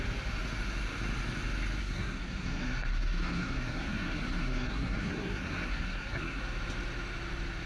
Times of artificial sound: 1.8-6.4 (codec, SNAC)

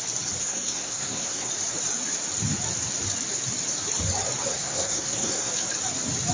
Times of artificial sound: 0.4-1.5 (codec, SNAC); 4.5-5.5

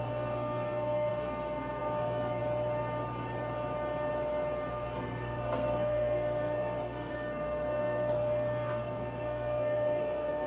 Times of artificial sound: 0.0-2.4 (codec, SNAC); 4.7-10.5

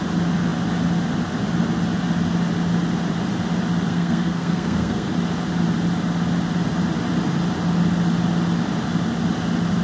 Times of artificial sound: 3.9-5.1 (codec, SNAC)

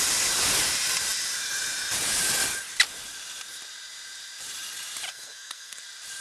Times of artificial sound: 5.1-5.8 (codec, SNAC)

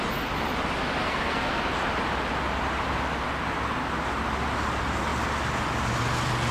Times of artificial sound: 1.0-1.6 (codec, SNAC)